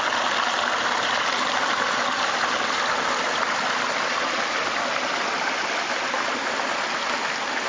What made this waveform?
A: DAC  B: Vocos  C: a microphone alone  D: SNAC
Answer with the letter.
C